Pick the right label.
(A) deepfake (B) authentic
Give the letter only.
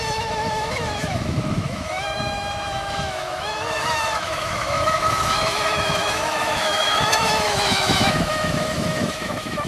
A